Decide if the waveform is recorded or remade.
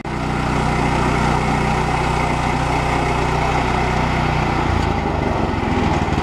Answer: recorded